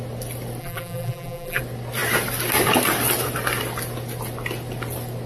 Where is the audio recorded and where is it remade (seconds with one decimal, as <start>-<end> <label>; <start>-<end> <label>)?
0.0-0.6 recorded; 0.6-1.6 remade; 1.6-5.3 recorded